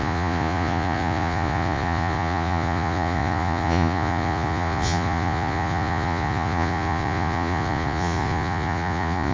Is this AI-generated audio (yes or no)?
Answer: yes